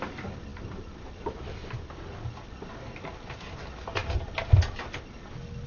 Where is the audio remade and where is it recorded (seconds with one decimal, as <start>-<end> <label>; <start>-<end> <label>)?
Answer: 0.0-0.5 recorded; 0.5-1.9 remade; 1.9-4.0 recorded; 4.0-4.8 remade; 4.8-5.7 recorded

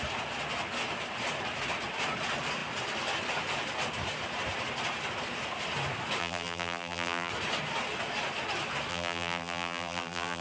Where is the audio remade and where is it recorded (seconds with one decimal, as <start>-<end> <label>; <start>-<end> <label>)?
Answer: 0.0-6.2 recorded; 6.2-7.3 remade; 7.3-8.9 recorded; 8.9-10.4 remade

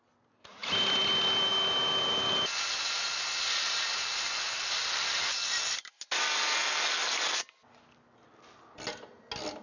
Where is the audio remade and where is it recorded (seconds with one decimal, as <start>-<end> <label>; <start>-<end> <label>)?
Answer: 0.0-0.6 recorded; 0.6-1.1 remade; 1.1-9.6 recorded

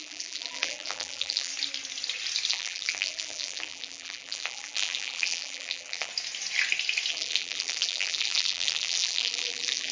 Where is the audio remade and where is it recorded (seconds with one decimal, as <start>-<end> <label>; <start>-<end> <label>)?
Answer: 0.0-1.5 remade; 1.5-2.5 recorded; 2.5-6.1 remade; 6.1-7.1 recorded; 7.1-9.9 remade

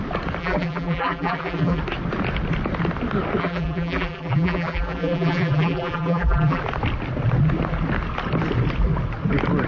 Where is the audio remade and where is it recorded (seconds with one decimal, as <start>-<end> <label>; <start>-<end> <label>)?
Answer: 0.0-0.4 recorded; 0.4-1.8 remade; 1.8-3.4 recorded; 3.4-6.6 remade; 6.6-9.7 recorded

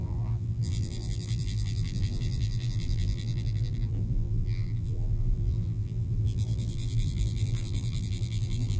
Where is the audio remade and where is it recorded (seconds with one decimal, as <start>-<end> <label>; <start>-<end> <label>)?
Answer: 0.0-8.8 remade

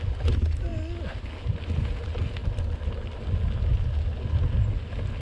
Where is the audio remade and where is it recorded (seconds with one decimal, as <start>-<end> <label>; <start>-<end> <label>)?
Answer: 0.0-5.2 recorded

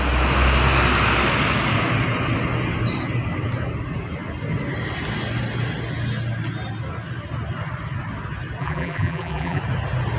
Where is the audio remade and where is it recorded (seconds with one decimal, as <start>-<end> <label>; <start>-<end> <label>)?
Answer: 0.0-8.6 recorded; 8.6-9.6 remade; 9.6-10.2 recorded